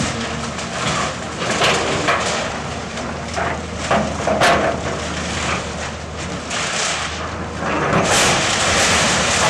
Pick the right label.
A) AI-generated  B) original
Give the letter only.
B